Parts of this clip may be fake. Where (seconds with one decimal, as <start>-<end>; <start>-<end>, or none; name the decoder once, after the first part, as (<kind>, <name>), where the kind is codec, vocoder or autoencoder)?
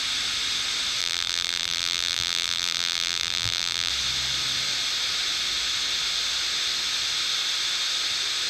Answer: 1.0-3.9 (vocoder, BigVGAN v2)